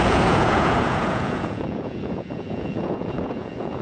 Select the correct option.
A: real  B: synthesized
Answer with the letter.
B